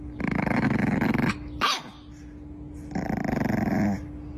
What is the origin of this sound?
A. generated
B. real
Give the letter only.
B